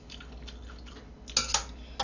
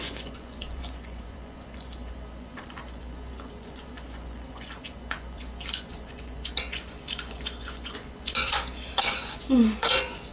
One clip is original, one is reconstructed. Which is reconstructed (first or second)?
second